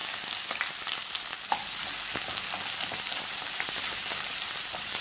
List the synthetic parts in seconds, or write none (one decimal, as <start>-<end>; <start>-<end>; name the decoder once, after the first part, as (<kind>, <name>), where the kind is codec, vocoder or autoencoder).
3.0-5.0 (vocoder, BigVGAN v2)